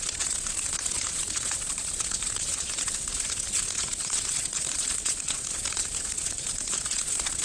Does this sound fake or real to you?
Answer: fake